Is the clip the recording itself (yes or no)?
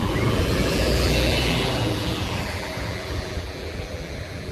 no